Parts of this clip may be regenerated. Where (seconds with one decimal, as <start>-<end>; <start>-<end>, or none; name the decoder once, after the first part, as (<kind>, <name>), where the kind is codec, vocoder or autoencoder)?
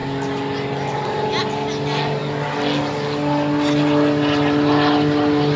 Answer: none